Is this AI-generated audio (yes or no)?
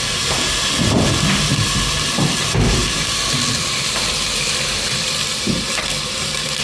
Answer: yes